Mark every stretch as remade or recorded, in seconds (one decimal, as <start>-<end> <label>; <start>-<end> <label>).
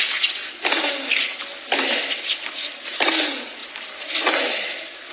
0.0-5.1 recorded